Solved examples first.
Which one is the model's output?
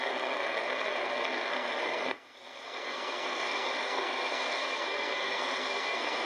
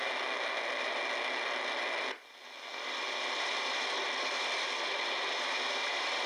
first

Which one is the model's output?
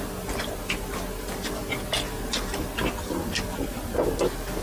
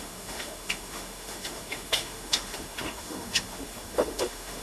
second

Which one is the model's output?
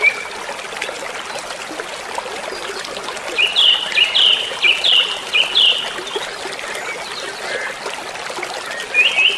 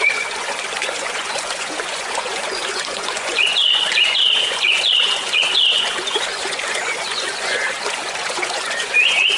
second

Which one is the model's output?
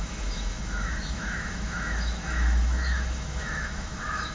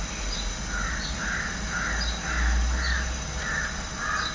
first